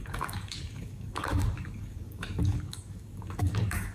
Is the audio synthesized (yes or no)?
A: yes